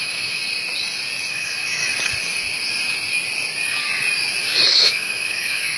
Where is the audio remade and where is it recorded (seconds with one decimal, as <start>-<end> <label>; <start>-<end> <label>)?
0.0-0.4 remade; 0.4-1.3 recorded; 1.3-1.8 remade; 1.8-4.7 recorded; 4.7-5.8 remade